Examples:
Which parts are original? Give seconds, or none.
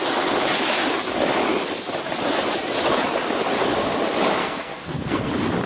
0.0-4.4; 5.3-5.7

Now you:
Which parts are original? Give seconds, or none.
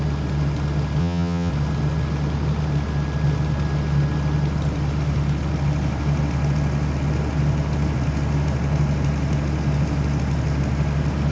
0.0-1.0; 1.5-11.3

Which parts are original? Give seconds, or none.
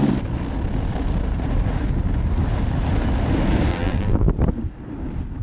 0.0-3.7; 4.3-5.4